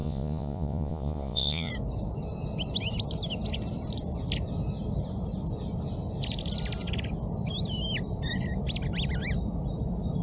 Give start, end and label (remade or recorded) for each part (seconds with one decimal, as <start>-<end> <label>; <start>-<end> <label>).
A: 0.0-1.7 remade; 1.7-10.2 recorded